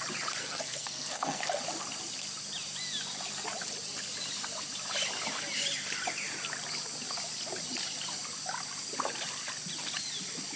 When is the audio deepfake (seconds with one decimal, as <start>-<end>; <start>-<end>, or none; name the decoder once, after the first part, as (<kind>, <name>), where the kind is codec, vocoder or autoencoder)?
0.4-1.6 (codec, SNAC)